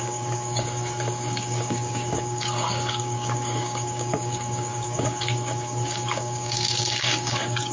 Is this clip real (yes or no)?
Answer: no